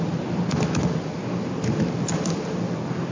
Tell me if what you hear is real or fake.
real